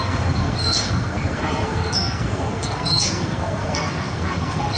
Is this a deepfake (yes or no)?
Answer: yes